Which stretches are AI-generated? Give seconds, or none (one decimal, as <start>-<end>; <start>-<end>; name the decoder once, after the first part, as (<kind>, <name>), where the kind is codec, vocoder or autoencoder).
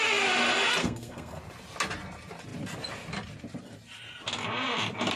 0.8-1.4 (codec, SNAC)